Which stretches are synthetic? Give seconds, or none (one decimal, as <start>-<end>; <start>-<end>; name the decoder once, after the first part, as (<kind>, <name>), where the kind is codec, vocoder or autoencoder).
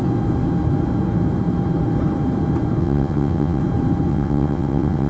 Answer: 2.8-3.6 (vocoder, WaveNeXt); 4.1-5.1